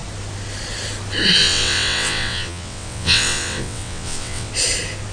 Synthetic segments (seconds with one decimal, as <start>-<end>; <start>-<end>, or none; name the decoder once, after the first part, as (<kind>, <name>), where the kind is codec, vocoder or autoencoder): 1.4-4.5 (vocoder, WaveNeXt)